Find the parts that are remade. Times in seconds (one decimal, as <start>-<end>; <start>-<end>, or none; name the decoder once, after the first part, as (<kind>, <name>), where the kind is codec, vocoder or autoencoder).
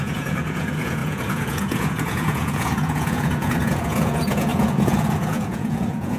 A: 0.0-6.2 (vocoder, Vocos)